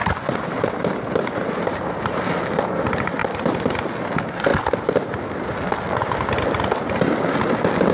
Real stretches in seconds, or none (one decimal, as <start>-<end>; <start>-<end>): 2.4-3.2; 3.9-7.9